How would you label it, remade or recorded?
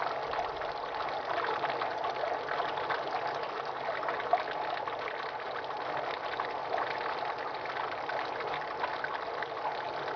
recorded